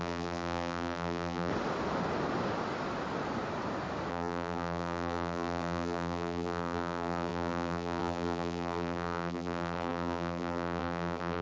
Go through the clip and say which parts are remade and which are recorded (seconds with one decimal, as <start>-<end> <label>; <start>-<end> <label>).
0.0-1.5 remade; 1.5-4.1 recorded; 4.1-11.4 remade